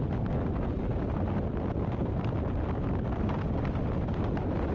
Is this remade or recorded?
recorded